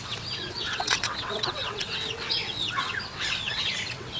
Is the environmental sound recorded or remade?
remade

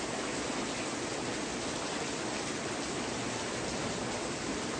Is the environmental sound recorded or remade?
recorded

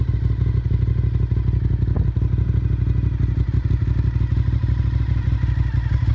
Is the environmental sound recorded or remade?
recorded